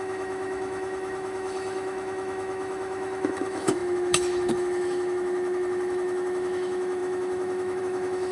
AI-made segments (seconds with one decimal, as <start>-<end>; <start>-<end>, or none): 0.0-8.3